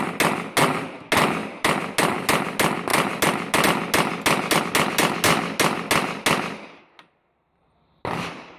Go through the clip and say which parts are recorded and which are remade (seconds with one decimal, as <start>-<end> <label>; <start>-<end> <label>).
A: 0.0-8.6 recorded